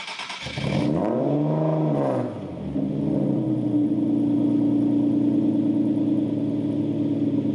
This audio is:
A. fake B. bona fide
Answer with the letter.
B